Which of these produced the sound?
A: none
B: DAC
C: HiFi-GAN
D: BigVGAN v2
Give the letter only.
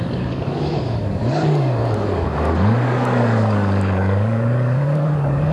B